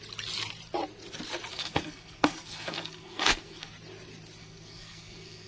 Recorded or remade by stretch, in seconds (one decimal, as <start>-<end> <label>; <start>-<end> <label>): 0.0-1.5 recorded; 1.5-3.7 remade; 3.7-4.4 recorded; 4.4-5.5 remade